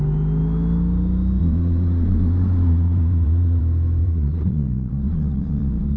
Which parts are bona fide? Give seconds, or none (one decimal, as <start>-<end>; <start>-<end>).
0.0-1.4; 3.6-4.0